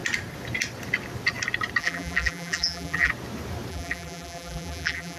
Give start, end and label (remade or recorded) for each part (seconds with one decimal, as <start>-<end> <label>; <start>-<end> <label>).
0.0-1.8 recorded; 1.8-3.1 remade; 3.1-3.7 recorded; 3.7-5.2 remade